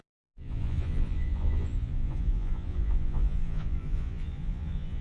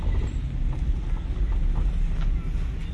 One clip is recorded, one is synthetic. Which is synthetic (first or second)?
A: first